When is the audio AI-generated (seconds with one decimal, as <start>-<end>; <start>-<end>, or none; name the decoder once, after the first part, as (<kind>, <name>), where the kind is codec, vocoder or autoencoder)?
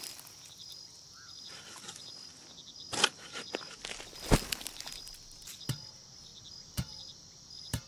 none